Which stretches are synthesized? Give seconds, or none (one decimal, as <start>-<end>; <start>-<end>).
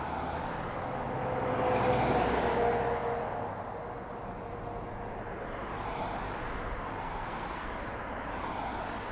7.0-7.7